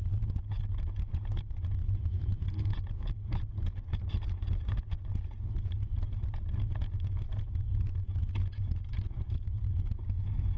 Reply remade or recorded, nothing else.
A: remade